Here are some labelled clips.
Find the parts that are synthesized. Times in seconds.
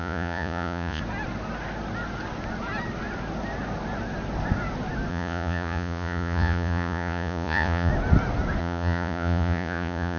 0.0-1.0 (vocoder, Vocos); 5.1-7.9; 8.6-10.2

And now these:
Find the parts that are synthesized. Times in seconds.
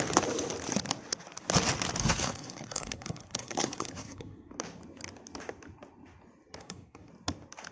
2.0-4.5 (codec, SNAC); 6.6-7.1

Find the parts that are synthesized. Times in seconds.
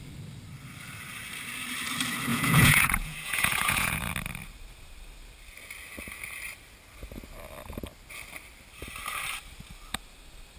2.3-4.1 (vocoder, Vocos)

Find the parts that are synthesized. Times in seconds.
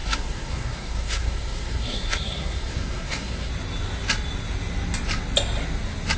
0.0-3.5 (codec, SNAC)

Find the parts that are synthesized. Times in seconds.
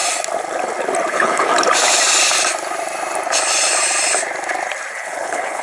1.1-1.5 (codec, HILCodec); 4.9-5.6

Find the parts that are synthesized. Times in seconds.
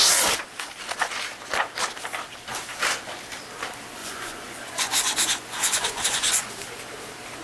4.0-6.5 (vocoder, Vocos)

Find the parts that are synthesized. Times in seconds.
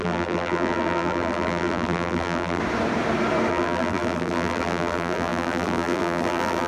0.0-2.6 (vocoder, BigVGAN v2); 3.5-6.7